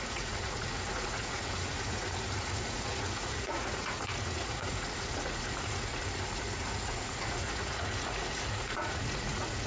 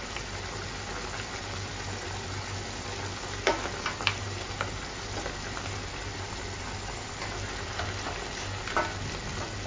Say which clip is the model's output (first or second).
first